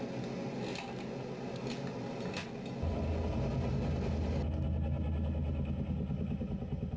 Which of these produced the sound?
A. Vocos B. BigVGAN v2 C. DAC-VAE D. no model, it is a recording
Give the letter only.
D